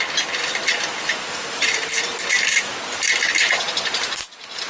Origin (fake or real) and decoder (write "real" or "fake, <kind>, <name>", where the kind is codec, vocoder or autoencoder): real